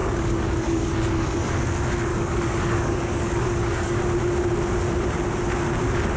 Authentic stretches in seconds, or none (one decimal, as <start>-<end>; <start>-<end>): 1.5-2.1; 4.0-6.2